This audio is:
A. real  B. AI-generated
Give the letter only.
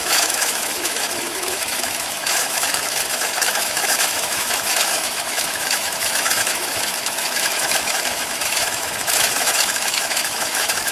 B